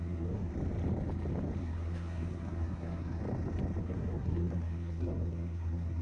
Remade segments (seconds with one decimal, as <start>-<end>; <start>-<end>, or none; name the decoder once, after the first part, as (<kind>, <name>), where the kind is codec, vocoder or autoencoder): 0.0-0.5 (codec, SNAC); 1.6-3.2; 3.8-6.0